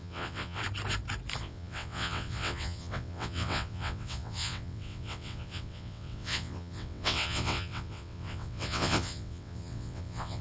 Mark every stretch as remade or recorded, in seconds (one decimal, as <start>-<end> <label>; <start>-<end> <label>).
0.0-0.6 remade; 0.6-1.4 recorded; 1.4-10.4 remade